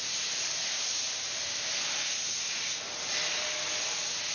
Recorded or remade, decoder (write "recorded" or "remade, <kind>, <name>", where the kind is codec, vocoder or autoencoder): recorded